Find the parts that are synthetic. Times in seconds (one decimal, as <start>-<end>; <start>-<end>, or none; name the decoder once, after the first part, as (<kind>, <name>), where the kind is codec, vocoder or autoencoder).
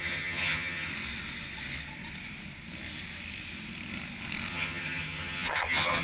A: 0.0-0.9 (vocoder, HiFi-GAN); 4.5-6.0